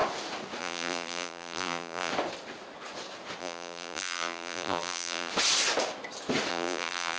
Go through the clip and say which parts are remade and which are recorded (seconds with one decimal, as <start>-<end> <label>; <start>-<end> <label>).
0.0-0.6 recorded; 0.6-2.1 remade; 2.1-3.4 recorded; 3.4-5.3 remade; 5.3-6.5 recorded; 6.5-7.2 remade